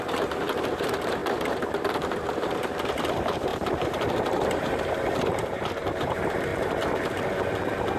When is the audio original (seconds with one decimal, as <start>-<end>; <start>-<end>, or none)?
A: 6.5-8.0